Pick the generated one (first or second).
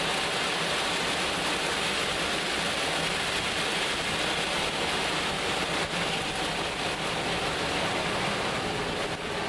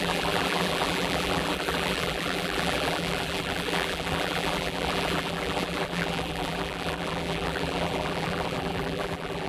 second